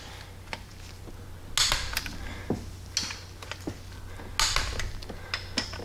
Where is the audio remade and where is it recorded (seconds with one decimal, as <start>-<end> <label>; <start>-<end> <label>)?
0.0-5.8 recorded